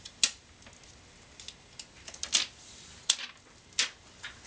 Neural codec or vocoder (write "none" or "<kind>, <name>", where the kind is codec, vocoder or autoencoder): none